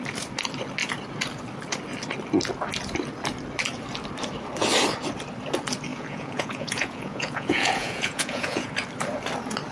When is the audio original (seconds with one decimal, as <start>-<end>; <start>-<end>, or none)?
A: 0.0-5.9; 8.7-9.7